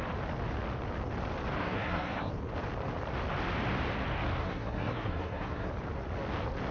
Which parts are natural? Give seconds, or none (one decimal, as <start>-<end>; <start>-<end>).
0.0-1.6; 2.3-4.4; 5.7-6.7

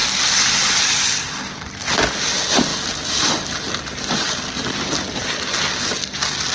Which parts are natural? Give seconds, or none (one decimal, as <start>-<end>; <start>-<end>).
0.0-6.5

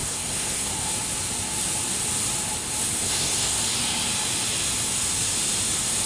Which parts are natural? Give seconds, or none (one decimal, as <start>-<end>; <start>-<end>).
0.7-3.0; 3.6-6.1

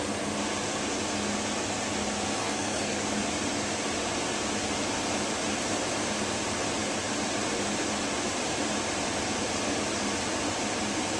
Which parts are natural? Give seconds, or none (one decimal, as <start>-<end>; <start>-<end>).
0.0-2.4; 3.0-11.2

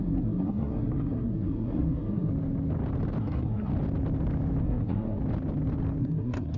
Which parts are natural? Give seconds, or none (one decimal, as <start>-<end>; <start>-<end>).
2.3-3.2; 3.7-4.6; 5.2-6.0

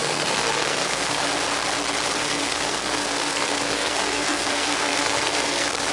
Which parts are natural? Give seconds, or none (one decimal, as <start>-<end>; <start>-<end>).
1.2-2.2